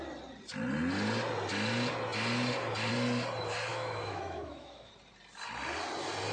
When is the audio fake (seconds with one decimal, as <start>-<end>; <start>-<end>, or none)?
3.7-4.9